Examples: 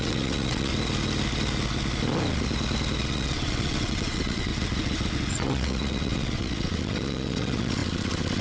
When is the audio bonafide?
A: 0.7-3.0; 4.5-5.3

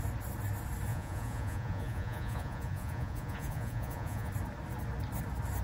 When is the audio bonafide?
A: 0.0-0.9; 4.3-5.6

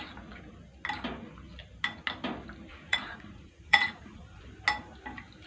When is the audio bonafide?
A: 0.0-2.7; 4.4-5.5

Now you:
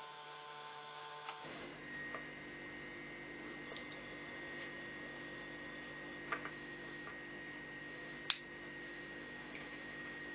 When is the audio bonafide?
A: 1.7-6.5; 7.1-7.8; 8.2-8.8

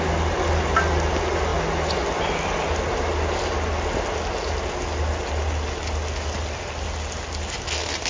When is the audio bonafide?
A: 0.0-8.1

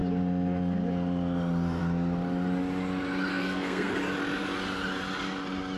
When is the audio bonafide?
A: 0.0-3.3; 3.9-5.8